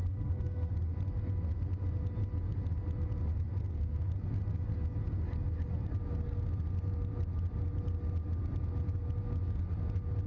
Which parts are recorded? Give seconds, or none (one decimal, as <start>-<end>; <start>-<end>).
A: 0.7-3.6; 4.1-10.3